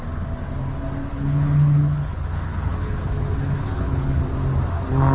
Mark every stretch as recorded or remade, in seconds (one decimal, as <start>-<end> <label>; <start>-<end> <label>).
0.0-1.1 recorded; 1.1-4.2 remade; 4.2-5.1 recorded